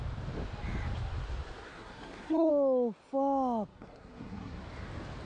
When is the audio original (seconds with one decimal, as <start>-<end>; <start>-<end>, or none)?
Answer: 0.0-1.7; 2.5-3.7; 4.6-5.3